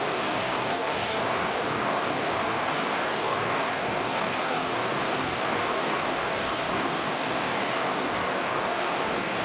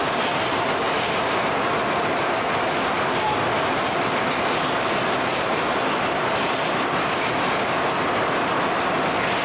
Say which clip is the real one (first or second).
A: second